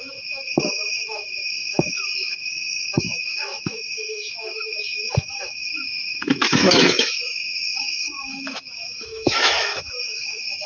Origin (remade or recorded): remade